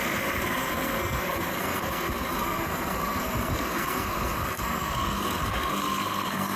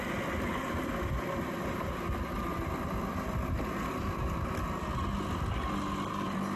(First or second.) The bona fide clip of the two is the second